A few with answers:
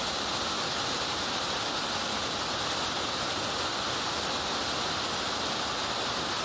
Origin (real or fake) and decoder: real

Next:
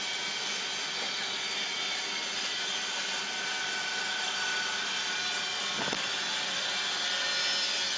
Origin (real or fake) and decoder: real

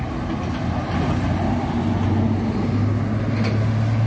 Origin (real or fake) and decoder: real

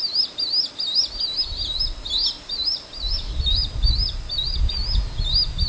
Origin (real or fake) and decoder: real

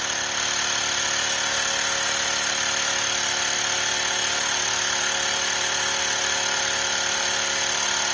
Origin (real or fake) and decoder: real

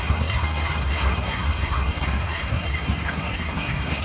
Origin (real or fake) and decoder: fake, codec, SNAC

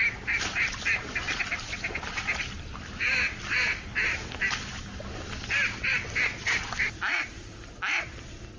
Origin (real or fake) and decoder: real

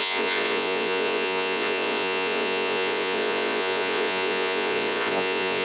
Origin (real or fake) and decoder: fake, vocoder, Vocos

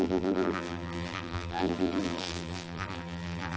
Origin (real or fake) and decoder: fake, vocoder, BigVGAN v2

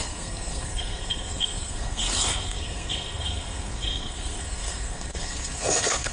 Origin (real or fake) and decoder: fake, codec, SNAC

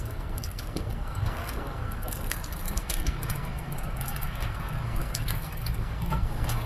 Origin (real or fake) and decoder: fake, codec, SNAC